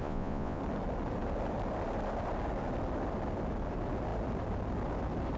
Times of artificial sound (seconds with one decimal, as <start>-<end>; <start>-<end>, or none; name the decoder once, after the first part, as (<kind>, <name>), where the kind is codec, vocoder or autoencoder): 0.0-0.6 (vocoder, Vocos)